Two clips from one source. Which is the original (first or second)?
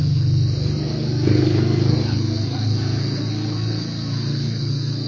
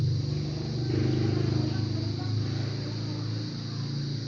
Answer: second